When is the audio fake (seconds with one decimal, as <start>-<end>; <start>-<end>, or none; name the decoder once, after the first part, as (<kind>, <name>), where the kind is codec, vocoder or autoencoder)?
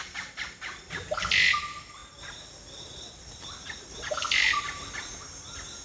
none